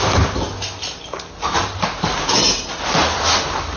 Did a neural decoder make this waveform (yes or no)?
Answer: no